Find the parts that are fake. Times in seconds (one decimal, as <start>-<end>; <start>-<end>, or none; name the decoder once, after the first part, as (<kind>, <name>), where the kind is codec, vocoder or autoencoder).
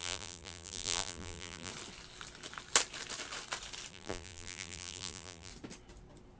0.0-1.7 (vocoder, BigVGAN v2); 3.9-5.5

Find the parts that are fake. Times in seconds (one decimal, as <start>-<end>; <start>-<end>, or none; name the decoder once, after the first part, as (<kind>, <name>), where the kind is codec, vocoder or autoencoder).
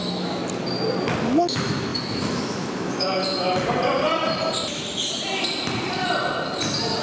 0.0-0.4 (autoencoder, DAC-VAE); 1.2-3.2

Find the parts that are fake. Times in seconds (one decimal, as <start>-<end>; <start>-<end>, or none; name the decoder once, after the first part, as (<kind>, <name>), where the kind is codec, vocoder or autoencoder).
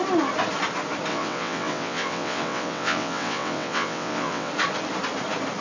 1.1-4.5 (vocoder, WaveNeXt)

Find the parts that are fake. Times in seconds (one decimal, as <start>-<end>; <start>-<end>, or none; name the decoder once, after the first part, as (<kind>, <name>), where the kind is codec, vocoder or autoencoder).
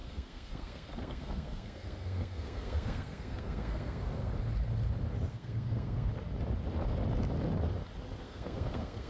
0.0-4.3 (codec, SNAC); 5.3-6.1; 8.2-9.1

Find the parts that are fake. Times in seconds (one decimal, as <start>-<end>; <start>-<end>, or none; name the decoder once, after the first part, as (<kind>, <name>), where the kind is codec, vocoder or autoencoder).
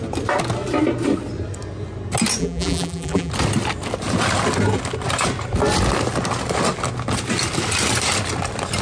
2.4-3.3 (vocoder, BigVGAN v2)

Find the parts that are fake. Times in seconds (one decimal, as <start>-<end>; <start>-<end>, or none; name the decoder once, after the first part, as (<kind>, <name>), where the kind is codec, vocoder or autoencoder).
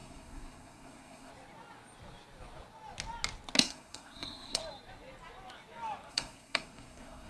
0.0-1.3 (codec, SNAC); 3.6-4.6; 6.1-7.3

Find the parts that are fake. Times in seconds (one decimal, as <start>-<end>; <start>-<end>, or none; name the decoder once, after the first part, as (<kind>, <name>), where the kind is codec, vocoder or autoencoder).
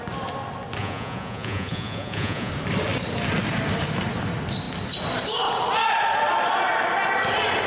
0.8-2.5 (vocoder, Vocos)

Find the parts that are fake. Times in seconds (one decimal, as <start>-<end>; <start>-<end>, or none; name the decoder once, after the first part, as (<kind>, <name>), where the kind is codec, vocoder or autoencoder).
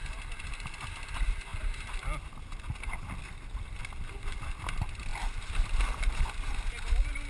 1.5-3.8 (vocoder, BigVGAN v2); 5.1-6.7